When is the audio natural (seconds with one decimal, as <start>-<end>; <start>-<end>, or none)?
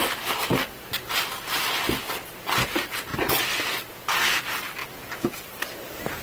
2.5-6.2